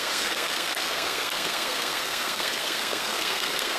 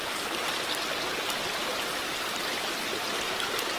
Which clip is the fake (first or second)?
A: first